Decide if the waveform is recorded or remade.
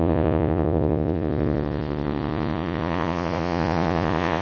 remade